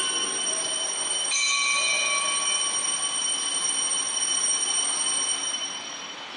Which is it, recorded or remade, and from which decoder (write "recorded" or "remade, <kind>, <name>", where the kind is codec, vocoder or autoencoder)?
recorded